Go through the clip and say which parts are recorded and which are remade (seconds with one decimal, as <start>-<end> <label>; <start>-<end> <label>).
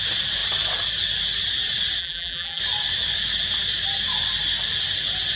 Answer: 0.0-2.0 recorded; 2.0-2.6 remade; 2.6-5.4 recorded